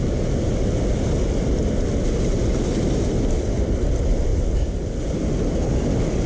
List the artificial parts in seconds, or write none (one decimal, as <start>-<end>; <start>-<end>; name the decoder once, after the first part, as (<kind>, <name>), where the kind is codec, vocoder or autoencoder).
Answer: 0.6-4.3 (vocoder, BigVGAN v2); 5.0-6.3